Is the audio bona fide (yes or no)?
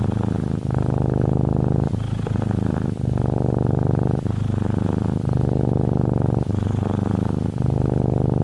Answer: yes